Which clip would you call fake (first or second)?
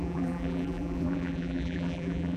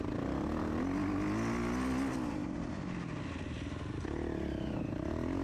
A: first